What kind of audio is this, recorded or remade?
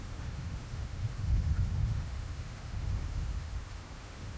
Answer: remade